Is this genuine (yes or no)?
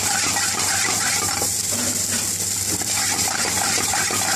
no